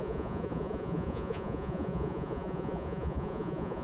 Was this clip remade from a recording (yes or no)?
yes